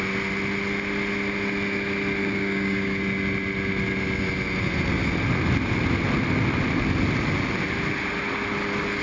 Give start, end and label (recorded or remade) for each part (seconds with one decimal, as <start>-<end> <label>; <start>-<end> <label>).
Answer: 0.0-2.2 recorded; 2.2-3.0 remade; 3.0-9.0 recorded